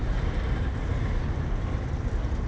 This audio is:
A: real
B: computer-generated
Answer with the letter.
A